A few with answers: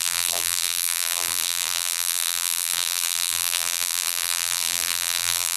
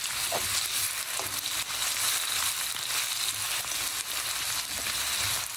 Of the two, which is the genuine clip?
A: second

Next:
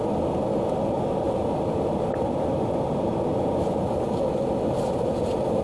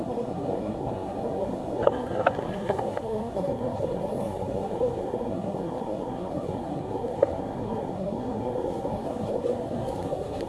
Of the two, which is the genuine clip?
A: first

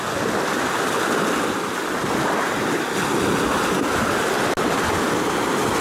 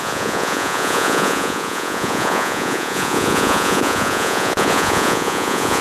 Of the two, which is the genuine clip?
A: first